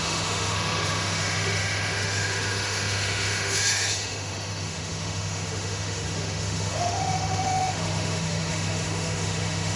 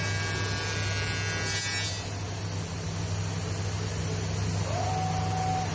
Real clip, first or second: second